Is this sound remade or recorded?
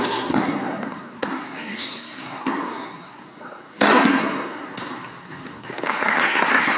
remade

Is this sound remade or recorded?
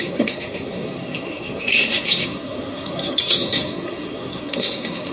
remade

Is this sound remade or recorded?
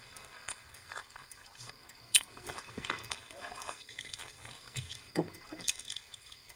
remade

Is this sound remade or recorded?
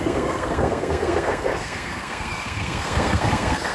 remade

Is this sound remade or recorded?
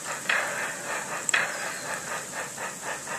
recorded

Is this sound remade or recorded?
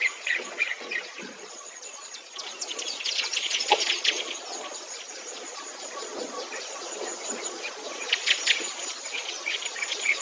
remade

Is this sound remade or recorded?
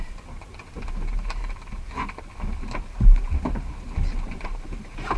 recorded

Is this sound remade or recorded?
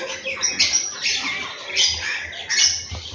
recorded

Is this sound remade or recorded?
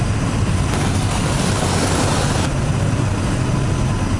recorded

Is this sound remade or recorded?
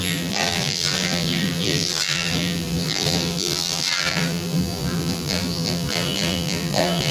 remade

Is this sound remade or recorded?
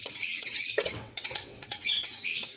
remade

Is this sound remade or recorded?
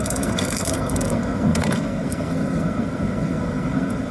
remade